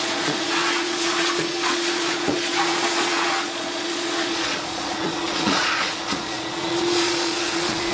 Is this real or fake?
fake